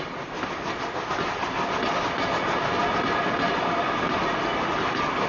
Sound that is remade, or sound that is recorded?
recorded